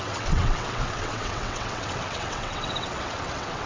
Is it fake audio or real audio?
fake